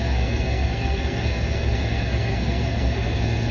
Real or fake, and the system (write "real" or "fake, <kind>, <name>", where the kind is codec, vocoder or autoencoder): fake, codec, SNAC